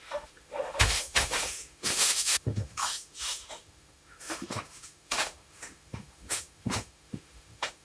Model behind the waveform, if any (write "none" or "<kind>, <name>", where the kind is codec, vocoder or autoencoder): autoencoder, DAC-VAE